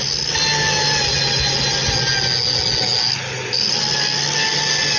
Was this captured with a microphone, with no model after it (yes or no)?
yes